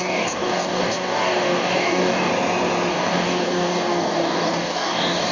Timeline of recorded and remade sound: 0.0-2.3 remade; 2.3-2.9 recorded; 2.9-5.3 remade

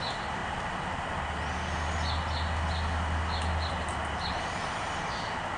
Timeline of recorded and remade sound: 0.0-5.6 recorded

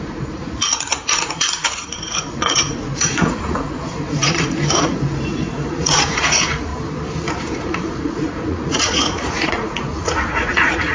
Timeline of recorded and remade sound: 0.0-6.7 remade; 6.7-7.4 recorded; 7.4-10.9 remade

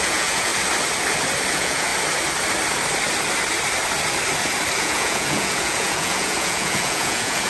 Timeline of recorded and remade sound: 0.0-0.5 remade; 0.5-1.5 recorded; 1.5-1.9 remade; 1.9-4.8 recorded; 4.8-7.5 remade